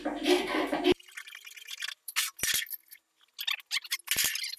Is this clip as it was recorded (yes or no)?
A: yes